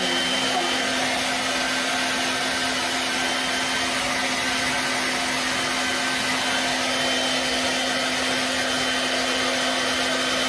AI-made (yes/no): no